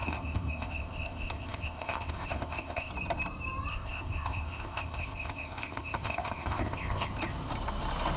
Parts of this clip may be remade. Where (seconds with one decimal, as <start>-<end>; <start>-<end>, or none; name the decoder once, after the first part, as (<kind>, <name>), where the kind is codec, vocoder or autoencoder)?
0.0-2.9 (codec, ZipCodec); 3.7-7.1